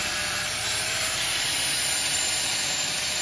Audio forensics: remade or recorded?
recorded